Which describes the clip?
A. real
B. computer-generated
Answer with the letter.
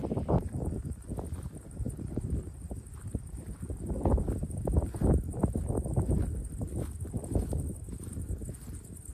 A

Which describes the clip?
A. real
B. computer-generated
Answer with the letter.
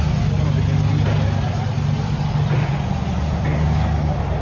A